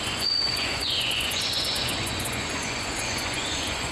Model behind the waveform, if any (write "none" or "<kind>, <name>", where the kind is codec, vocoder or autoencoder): vocoder, Vocos